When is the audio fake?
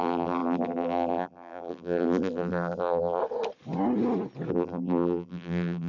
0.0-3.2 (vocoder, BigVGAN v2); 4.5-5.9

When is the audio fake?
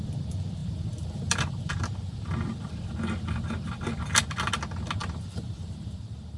0.6-1.7 (vocoder, BigVGAN v2); 5.0-6.0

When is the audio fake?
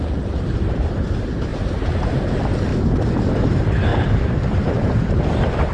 1.5-2.1 (vocoder, BigVGAN v2); 3.9-5.1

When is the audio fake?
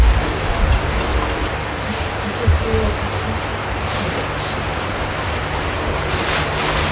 1.1-2.1 (vocoder, BigVGAN v2); 3.5-5.2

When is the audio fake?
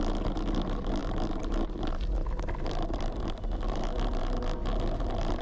1.0-4.2 (vocoder, BigVGAN v2)